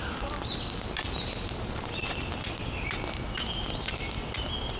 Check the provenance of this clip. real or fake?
real